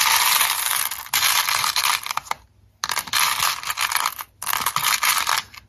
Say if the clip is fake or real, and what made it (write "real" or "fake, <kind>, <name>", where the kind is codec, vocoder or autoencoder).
real